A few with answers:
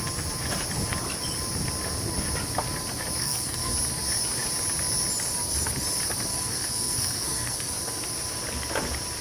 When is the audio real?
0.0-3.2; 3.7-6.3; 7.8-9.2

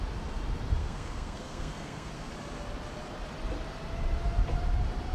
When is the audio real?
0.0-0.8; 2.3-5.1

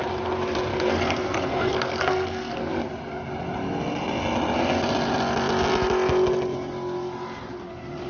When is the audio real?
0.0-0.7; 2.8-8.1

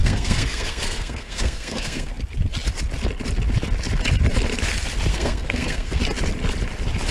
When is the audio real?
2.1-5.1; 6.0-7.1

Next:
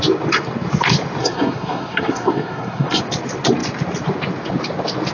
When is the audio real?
0.0-1.2; 3.0-5.1